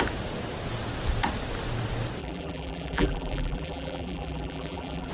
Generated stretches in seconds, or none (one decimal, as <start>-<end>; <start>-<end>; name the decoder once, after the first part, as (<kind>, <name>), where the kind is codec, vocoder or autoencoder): 2.2-5.1 (vocoder, BigVGAN v2)